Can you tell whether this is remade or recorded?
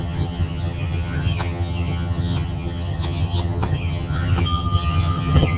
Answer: remade